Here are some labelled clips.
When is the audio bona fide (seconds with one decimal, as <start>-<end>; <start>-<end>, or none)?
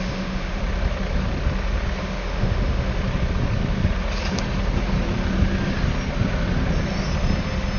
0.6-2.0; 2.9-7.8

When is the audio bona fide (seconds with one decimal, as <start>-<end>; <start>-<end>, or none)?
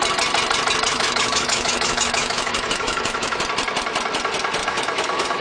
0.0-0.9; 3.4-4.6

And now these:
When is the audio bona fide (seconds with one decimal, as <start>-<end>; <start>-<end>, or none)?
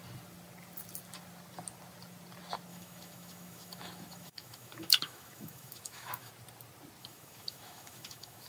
0.0-2.7; 6.3-7.0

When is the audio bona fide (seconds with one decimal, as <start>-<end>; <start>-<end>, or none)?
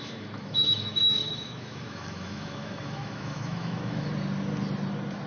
4.1-5.3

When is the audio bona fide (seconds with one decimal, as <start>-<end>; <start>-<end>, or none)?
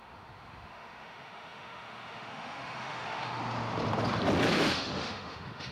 3.4-4.5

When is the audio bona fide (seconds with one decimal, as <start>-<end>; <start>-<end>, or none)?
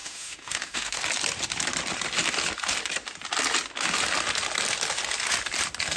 1.0-6.0